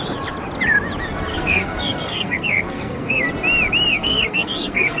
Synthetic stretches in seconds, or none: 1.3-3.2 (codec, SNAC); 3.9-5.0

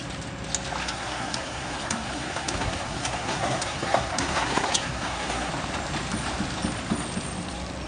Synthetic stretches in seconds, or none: 0.8-5.5 (codec, SNAC)

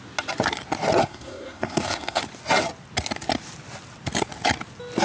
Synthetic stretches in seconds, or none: 1.0-2.2 (codec, SNAC)

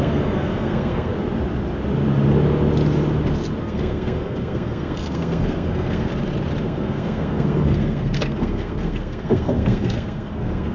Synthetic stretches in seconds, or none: 0.0-1.1 (codec, SNAC); 3.6-6.1; 6.6-10.7

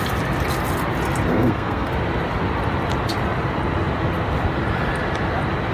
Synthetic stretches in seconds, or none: 1.3-1.9 (codec, SNAC)